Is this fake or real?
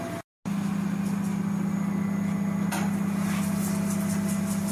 real